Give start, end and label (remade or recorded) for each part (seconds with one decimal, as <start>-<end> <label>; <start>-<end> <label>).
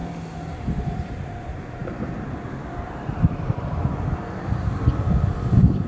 0.0-0.5 recorded; 0.5-5.9 remade